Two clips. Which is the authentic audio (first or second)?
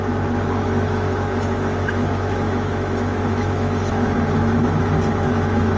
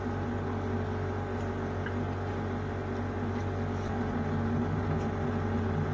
second